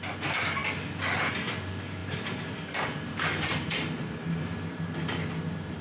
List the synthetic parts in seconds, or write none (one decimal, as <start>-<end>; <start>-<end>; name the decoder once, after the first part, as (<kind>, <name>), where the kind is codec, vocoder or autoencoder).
2.0-5.3 (vocoder, BigVGAN v2)